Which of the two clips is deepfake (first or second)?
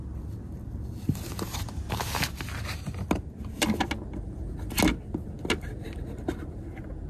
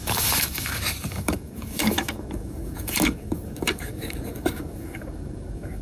second